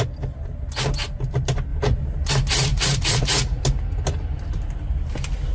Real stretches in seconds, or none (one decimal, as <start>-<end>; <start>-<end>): 0.0-2.7; 3.6-5.5